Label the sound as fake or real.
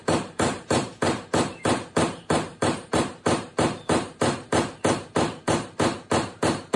fake